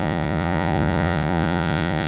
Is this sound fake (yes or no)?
yes